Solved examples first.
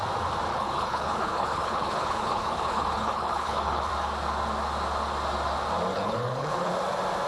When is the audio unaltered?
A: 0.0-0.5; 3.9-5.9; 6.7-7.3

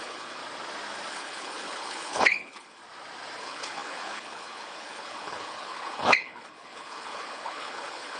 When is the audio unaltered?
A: 0.4-1.1; 2.8-3.4

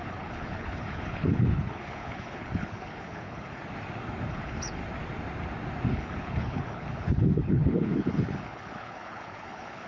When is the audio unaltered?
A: 3.6-4.3; 4.8-5.9

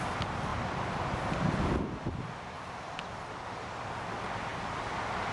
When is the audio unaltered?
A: 0.0-5.3

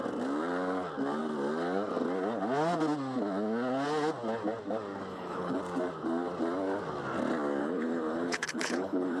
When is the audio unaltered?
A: 0.0-5.1; 5.6-7.6

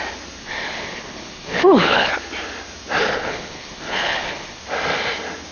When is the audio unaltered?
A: 0.0-0.4; 2.1-3.0; 4.6-5.5

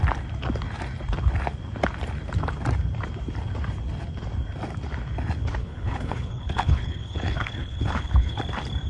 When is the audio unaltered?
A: 0.0-5.6; 8.4-8.9